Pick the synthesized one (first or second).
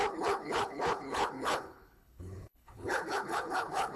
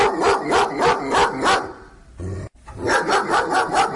first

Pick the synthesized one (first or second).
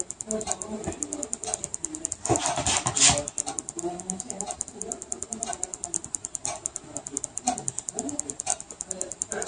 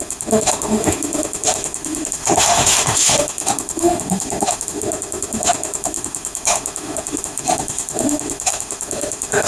second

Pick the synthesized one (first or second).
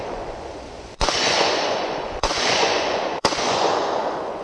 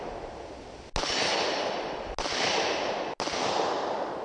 first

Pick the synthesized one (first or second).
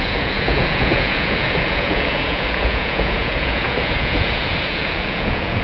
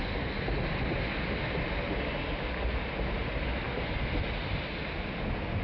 first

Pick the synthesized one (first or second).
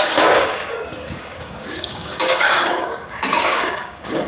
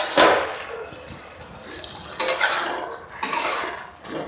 first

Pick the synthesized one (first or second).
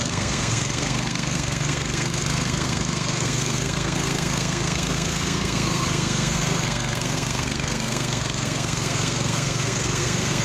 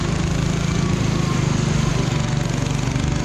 first